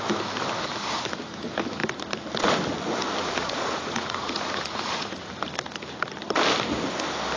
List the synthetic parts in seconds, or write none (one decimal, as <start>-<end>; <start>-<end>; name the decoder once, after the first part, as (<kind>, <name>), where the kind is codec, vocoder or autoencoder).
3.2-5.3 (vocoder, Vocos)